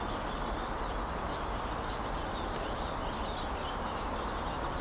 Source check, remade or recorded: recorded